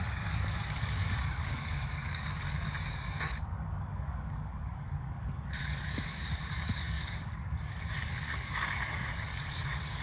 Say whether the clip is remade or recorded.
remade